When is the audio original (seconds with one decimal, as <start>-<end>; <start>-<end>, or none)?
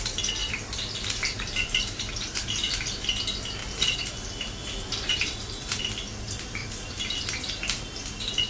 0.0-0.4; 3.0-3.6; 5.8-6.6; 7.3-8.5